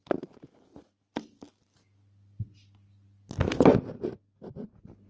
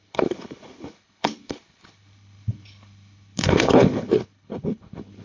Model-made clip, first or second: second